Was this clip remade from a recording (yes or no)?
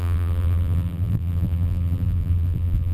yes